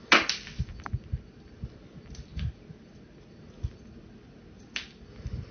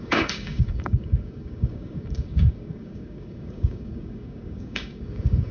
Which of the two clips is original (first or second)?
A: first